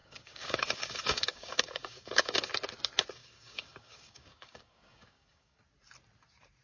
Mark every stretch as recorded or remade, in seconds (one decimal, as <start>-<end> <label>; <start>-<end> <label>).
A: 0.0-2.5 remade; 2.5-3.2 recorded; 3.2-5.6 remade; 5.6-6.6 recorded